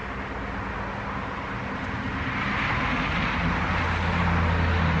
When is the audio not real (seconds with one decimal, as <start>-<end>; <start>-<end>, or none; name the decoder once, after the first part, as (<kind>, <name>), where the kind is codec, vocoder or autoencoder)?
none